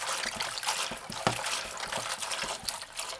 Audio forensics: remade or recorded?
recorded